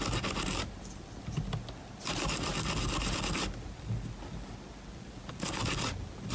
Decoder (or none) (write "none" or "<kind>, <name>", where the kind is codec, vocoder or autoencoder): none